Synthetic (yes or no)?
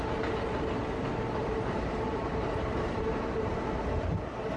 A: yes